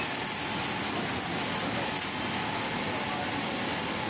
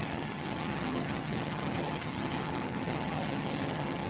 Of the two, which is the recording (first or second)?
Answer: first